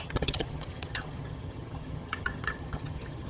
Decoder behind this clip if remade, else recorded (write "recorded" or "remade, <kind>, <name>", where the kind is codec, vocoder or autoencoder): remade, vocoder, HiFi-GAN